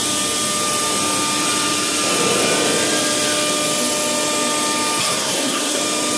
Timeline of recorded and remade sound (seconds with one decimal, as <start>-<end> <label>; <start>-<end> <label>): 0.0-5.0 recorded; 5.0-5.8 remade; 5.8-6.2 recorded